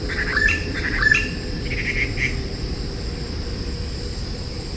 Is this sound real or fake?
real